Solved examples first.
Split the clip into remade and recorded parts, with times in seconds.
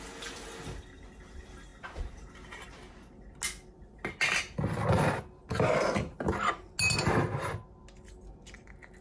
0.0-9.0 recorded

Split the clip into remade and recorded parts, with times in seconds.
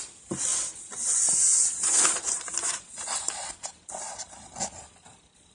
0.0-5.5 recorded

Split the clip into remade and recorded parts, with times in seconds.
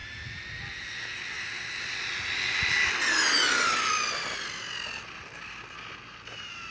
0.0-6.7 recorded